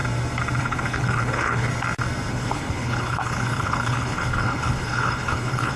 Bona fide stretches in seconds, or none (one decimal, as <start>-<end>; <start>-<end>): 0.0-0.6; 1.7-2.3